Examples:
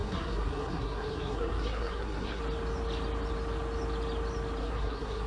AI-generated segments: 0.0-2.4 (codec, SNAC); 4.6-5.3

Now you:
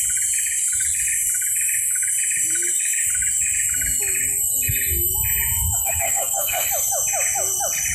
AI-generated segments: 5.8-6.7 (codec, SNAC)

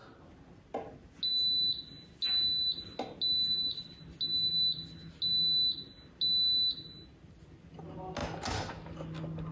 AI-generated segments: none

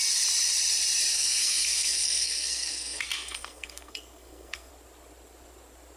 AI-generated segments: 1.1-4.7 (codec, SNAC)

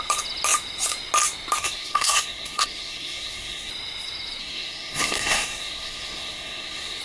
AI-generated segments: 1.6-3.7 (codec, SNAC); 4.4-7.0

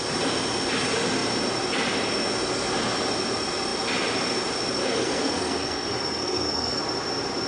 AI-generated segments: 4.8-6.8 (codec, SNAC)